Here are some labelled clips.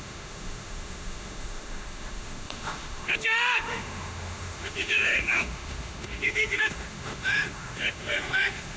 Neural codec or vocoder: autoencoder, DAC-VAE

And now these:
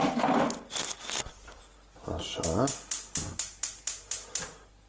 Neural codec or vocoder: none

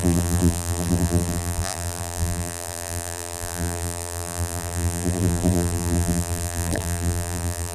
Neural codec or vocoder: vocoder, BigVGAN v2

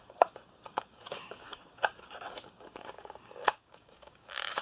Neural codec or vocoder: codec, DAC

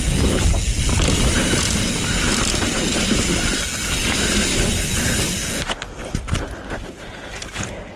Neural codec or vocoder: none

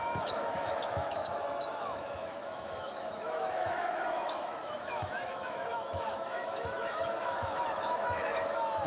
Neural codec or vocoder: autoencoder, DAC-VAE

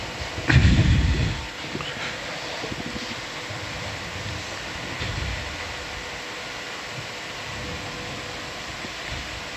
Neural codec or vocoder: none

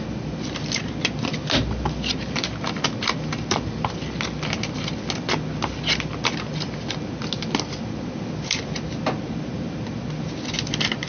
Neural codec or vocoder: none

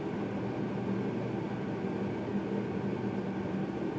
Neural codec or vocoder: none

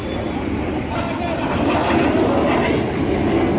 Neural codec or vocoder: none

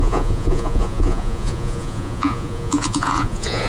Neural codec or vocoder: vocoder, Vocos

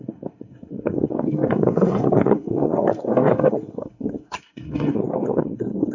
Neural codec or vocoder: codec, SNAC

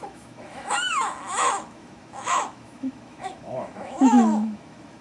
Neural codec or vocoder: autoencoder, DAC-VAE